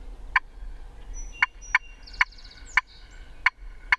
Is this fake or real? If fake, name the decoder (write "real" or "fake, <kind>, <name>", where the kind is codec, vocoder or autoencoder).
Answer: real